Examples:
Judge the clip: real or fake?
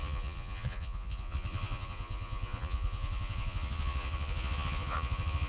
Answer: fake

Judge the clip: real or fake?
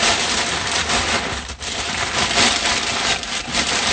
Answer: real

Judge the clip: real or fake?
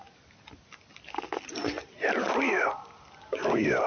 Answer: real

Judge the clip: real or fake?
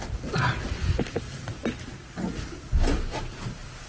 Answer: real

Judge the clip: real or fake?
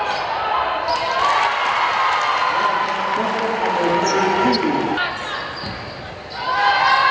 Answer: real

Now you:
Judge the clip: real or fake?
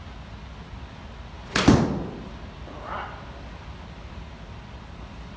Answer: real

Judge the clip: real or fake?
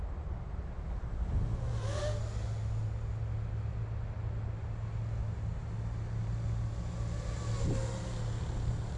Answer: real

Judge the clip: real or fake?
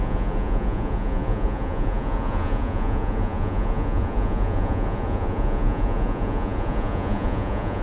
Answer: fake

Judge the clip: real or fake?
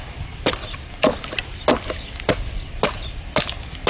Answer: real